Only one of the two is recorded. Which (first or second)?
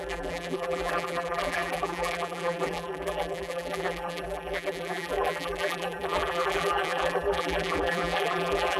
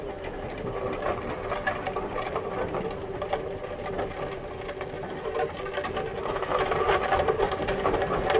second